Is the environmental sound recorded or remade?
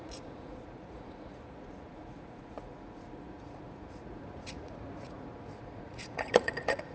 remade